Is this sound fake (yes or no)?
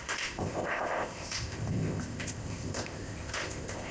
yes